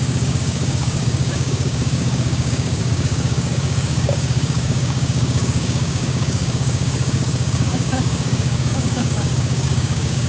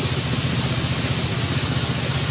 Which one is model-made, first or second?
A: first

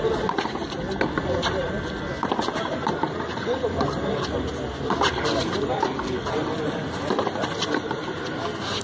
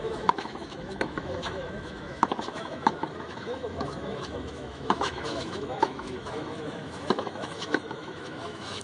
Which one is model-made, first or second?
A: second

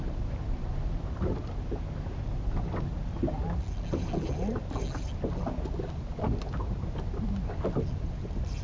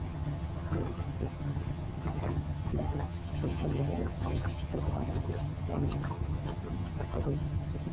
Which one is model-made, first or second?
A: second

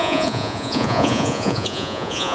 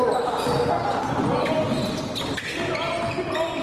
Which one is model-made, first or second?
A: first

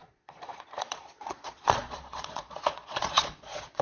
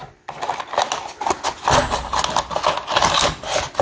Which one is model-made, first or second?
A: first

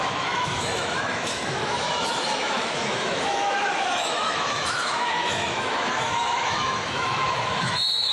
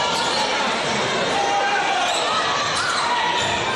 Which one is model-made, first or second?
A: first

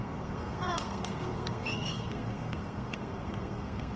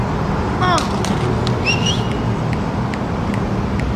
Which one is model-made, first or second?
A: first